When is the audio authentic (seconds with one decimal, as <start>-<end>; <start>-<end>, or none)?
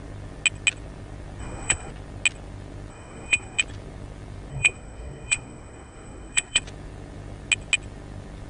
0.0-1.4; 1.9-2.9; 3.6-4.5; 6.6-8.5